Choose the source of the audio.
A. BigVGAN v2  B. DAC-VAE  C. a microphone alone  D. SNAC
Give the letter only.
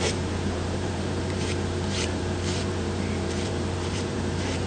A